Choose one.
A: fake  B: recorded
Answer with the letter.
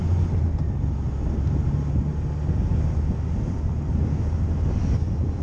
B